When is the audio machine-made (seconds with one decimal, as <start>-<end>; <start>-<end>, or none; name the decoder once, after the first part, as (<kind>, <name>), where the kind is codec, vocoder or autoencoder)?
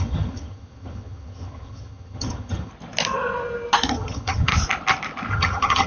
0.0-2.7 (vocoder, HiFi-GAN); 3.9-4.5; 5.3-5.9